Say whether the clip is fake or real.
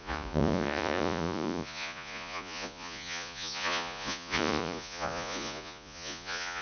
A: fake